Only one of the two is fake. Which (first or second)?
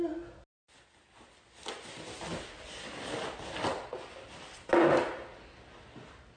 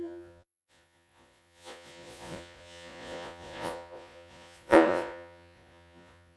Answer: second